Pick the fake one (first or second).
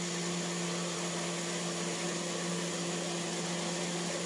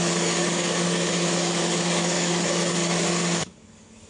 second